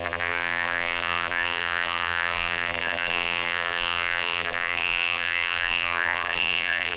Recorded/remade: remade